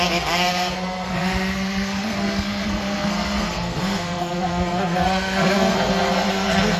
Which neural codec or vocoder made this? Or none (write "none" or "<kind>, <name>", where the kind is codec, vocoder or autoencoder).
codec, SNAC